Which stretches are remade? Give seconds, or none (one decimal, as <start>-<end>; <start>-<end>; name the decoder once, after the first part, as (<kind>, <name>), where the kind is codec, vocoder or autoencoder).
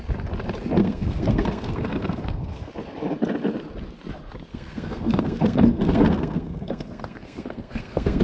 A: 0.8-2.7 (codec, SNAC); 4.5-8.2